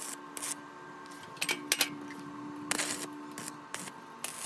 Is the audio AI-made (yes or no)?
no